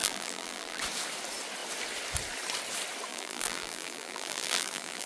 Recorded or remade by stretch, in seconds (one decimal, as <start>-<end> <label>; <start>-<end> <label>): 0.0-0.8 remade; 0.8-3.1 recorded; 3.1-5.1 remade